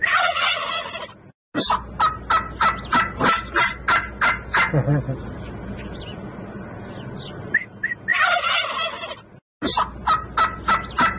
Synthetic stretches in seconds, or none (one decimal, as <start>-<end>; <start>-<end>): 0.0-0.9